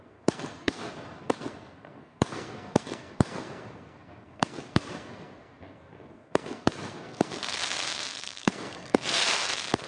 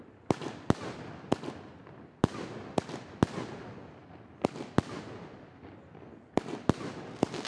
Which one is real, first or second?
second